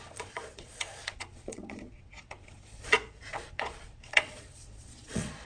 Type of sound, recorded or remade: remade